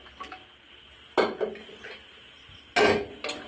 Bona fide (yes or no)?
yes